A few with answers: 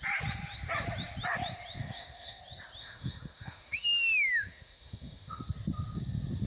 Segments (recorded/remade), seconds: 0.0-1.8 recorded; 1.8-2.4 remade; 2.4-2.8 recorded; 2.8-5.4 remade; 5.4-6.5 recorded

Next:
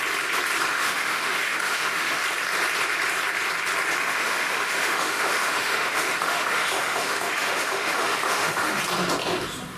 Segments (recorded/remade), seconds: 0.0-0.7 recorded; 0.7-2.2 remade; 2.2-4.0 recorded; 4.0-8.8 remade; 8.8-9.8 recorded

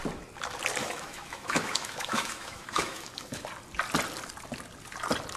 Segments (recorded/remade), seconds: 0.0-0.8 recorded; 0.8-3.4 remade; 3.4-5.4 recorded

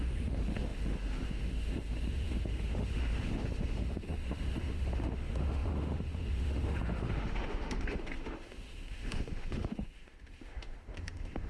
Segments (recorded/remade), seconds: 0.0-11.5 remade

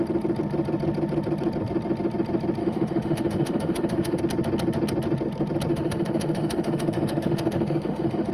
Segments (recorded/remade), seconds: 0.0-2.6 recorded; 2.6-4.2 remade; 4.2-5.7 recorded; 5.7-8.3 remade

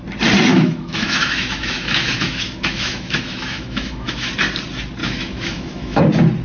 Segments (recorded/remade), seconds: 0.0-0.5 recorded; 0.5-4.3 remade; 4.3-5.0 recorded; 5.0-6.0 remade; 6.0-6.4 recorded

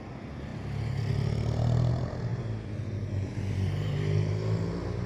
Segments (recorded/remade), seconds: 0.0-5.1 recorded